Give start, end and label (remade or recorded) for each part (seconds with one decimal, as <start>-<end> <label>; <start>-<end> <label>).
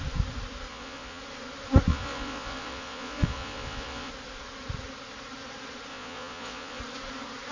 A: 0.0-0.7 recorded; 0.7-1.2 remade; 1.2-1.9 recorded; 1.9-4.1 remade; 4.1-5.9 recorded; 5.9-6.8 remade; 6.8-7.5 recorded